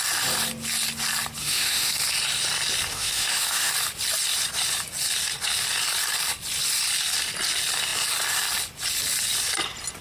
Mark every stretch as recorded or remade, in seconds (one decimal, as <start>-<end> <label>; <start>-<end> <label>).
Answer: 0.0-1.4 recorded; 1.4-1.9 remade; 1.9-2.9 recorded; 2.9-3.7 remade; 3.7-10.0 recorded